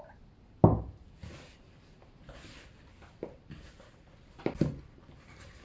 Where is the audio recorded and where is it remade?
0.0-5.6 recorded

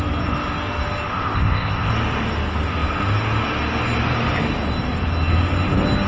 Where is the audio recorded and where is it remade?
0.0-1.1 recorded; 1.1-1.9 remade; 1.9-6.1 recorded

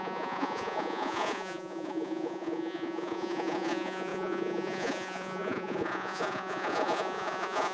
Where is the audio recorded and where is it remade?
0.0-7.7 remade

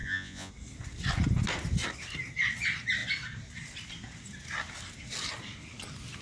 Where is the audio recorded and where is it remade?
0.0-0.5 remade; 0.5-6.2 recorded

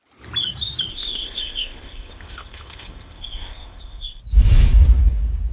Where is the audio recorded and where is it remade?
0.0-0.9 recorded; 0.9-4.2 remade; 4.2-5.5 recorded

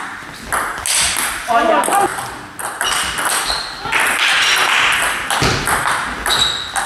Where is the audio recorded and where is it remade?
0.0-6.9 recorded